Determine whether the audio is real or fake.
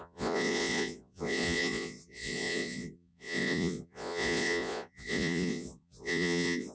fake